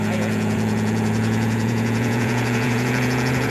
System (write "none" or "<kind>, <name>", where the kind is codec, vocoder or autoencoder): vocoder, Vocos